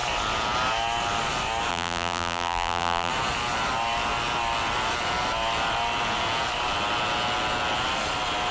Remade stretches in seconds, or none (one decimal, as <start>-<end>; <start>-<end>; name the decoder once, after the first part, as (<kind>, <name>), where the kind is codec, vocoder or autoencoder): 1.7-3.1 (vocoder, BigVGAN v2)